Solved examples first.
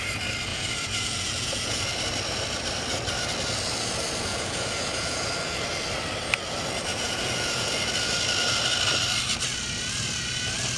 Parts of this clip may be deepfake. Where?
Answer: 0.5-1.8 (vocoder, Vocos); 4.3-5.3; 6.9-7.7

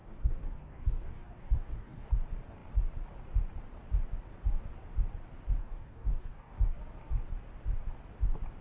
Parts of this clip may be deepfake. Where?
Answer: 0.0-2.1 (codec, DAC); 5.6-6.8

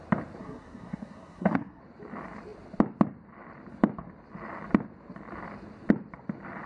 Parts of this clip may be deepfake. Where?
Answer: 0.4-1.8 (codec, SNAC)